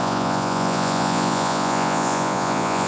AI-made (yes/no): yes